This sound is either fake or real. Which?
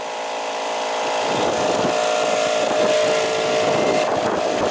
real